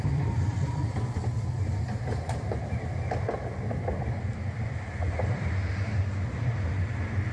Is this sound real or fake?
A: real